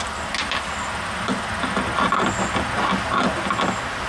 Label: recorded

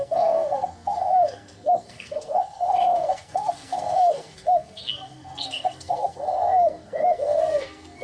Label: remade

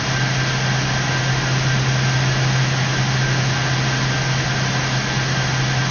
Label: recorded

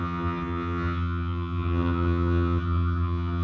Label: remade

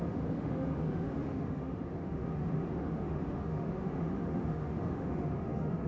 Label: remade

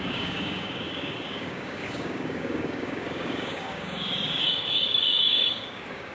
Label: remade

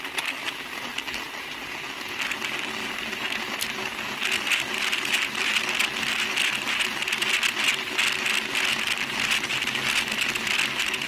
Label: recorded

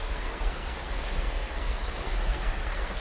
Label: remade